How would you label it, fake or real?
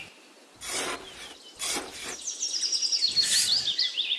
real